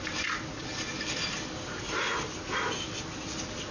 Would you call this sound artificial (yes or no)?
no